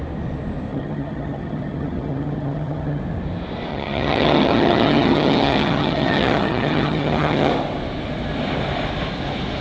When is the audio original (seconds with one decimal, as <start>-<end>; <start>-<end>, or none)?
0.0-0.7; 3.0-3.7; 7.5-9.6

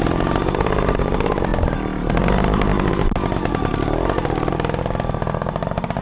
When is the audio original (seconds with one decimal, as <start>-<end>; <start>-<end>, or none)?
0.0-6.0

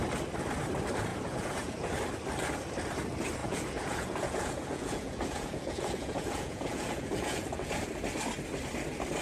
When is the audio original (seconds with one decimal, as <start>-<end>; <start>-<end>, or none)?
0.0-1.1; 1.9-3.4; 7.7-9.2